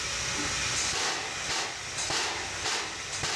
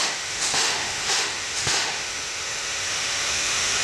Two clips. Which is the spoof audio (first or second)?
second